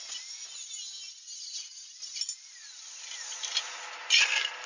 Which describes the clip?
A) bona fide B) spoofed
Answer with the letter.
A